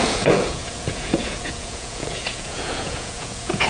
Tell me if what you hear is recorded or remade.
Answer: remade